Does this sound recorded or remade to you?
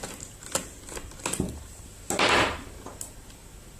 recorded